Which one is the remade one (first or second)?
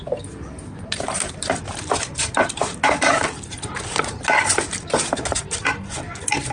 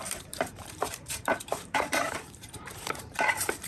second